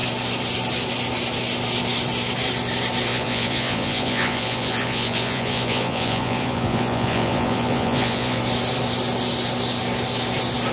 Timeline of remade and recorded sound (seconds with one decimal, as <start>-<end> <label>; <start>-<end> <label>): 0.0-3.1 recorded; 3.1-8.4 remade; 8.4-10.7 recorded